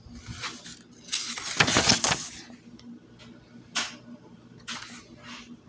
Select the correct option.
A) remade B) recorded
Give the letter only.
B